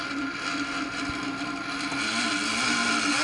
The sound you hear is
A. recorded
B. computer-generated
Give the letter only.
A